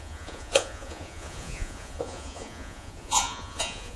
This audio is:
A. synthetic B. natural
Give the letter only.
A